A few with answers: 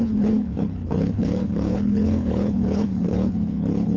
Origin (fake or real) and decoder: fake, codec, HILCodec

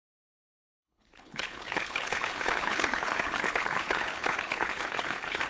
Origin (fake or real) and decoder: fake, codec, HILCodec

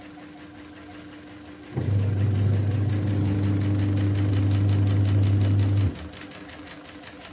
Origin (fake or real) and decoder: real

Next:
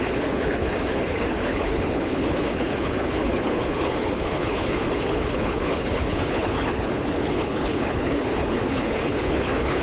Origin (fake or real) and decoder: fake, codec, HILCodec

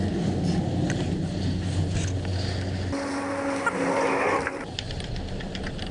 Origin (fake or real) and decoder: real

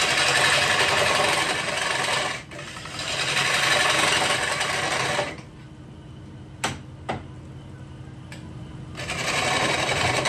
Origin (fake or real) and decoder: real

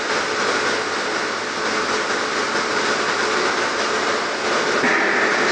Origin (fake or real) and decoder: real